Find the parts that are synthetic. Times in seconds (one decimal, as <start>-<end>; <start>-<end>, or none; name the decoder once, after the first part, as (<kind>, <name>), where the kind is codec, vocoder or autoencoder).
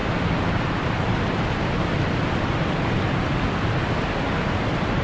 none